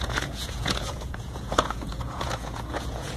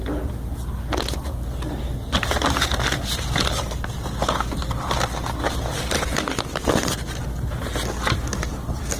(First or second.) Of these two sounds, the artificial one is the first